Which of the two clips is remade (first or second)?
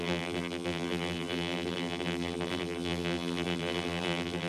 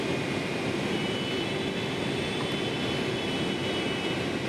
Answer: first